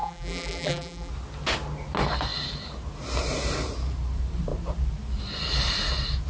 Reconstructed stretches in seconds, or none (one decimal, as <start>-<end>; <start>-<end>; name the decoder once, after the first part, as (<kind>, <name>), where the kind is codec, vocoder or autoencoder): 0.0-1.1 (vocoder, BigVGAN v2)